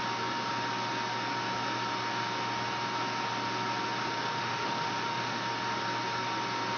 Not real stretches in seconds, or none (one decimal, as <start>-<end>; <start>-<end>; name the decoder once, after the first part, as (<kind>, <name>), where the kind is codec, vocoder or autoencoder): 4.0-5.4 (autoencoder, DAC-VAE)